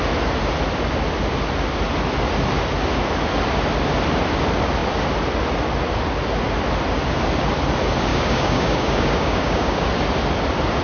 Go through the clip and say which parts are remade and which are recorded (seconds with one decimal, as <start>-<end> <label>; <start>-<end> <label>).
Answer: 0.0-8.1 recorded; 8.1-9.9 remade; 9.9-10.8 recorded